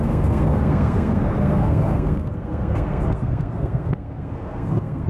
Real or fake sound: fake